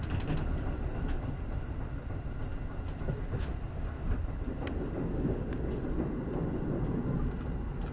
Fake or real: real